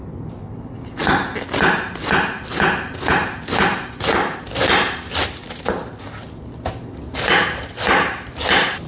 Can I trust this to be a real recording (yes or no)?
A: yes